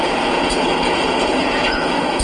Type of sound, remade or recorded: remade